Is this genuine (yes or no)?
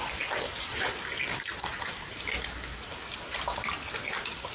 yes